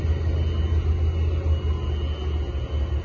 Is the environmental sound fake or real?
real